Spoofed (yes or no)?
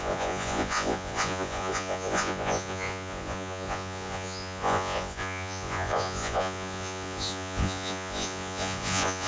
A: yes